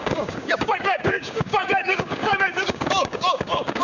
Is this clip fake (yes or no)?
yes